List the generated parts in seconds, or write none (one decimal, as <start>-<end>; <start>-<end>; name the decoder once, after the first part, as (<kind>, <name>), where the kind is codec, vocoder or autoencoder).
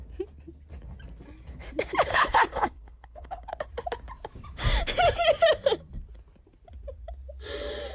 2.1-3.5 (codec, HILCodec)